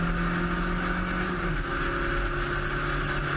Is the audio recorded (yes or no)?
yes